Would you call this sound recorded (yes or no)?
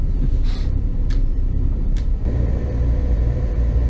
no